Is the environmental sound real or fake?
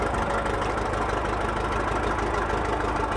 real